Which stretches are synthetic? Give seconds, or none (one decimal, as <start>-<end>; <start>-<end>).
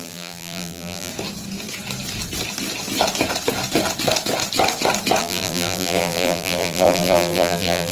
0.0-1.1; 5.2-7.9